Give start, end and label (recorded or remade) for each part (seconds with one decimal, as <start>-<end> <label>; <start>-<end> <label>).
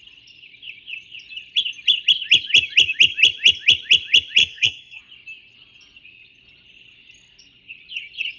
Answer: 0.0-4.4 recorded; 4.4-5.0 remade; 5.0-8.4 recorded